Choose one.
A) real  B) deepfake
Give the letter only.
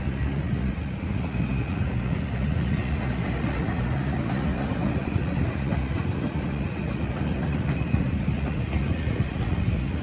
B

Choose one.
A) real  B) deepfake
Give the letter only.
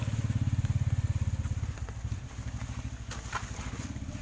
A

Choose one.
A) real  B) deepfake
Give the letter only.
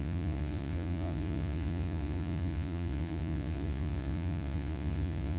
B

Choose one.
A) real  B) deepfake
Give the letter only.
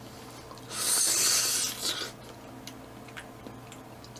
A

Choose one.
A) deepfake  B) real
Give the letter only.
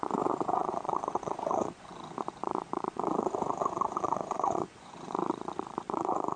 A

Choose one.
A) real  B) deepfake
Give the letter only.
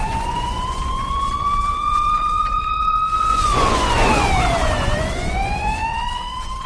B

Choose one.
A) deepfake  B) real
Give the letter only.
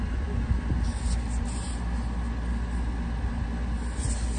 B